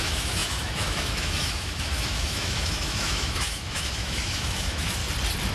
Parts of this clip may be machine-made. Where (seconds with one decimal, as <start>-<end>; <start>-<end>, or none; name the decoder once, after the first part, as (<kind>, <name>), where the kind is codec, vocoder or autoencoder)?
0.0-5.0 (autoencoder, DAC-VAE)